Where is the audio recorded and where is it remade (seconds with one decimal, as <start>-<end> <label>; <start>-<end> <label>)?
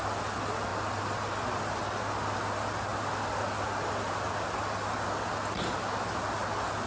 0.0-6.9 recorded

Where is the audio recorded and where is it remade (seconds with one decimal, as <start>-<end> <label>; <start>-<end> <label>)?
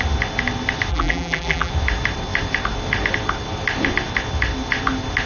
0.0-0.9 recorded; 0.9-1.7 remade; 1.7-5.3 recorded